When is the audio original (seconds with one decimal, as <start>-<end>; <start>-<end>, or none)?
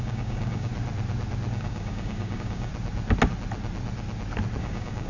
0.7-1.5; 2.7-4.6